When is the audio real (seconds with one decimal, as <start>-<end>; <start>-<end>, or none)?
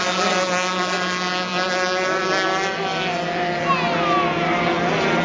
0.0-5.2